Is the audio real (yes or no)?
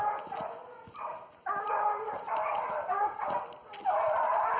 yes